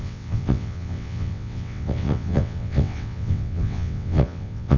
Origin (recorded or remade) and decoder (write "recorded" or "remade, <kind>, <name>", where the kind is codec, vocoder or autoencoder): remade, vocoder, WaveNeXt